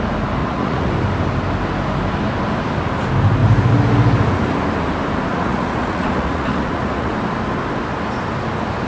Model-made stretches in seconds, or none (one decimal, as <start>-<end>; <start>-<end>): 0.4-0.9; 5.3-7.1